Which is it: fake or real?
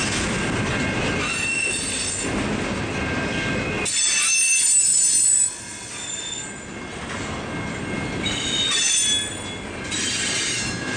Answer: real